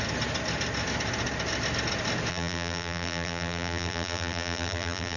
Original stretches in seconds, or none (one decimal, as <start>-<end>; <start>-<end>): 0.0-2.3